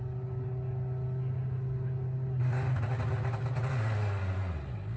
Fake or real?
real